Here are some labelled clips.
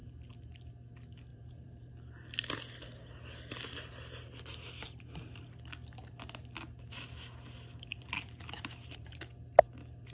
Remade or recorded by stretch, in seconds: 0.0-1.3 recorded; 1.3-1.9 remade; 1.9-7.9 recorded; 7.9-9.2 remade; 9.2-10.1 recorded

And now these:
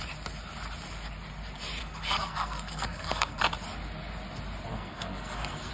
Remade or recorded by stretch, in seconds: 0.0-1.8 recorded; 1.8-3.4 remade; 3.4-4.7 recorded; 4.7-5.7 remade